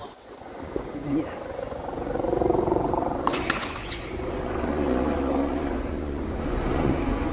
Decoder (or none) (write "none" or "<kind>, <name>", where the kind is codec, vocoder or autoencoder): vocoder, Vocos